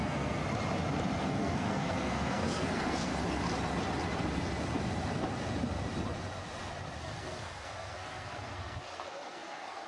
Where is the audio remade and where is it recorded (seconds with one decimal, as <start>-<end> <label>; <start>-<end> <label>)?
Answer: 0.0-0.4 remade; 0.4-1.2 recorded; 1.2-3.1 remade; 3.1-7.0 recorded; 7.0-9.9 remade